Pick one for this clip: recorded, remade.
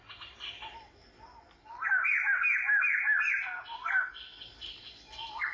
recorded